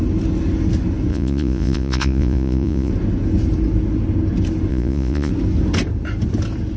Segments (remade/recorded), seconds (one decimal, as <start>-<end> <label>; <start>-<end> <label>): 0.0-1.1 recorded; 1.1-2.9 remade; 2.9-4.7 recorded; 4.7-5.3 remade; 5.3-6.8 recorded